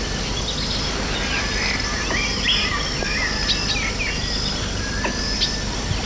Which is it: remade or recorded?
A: recorded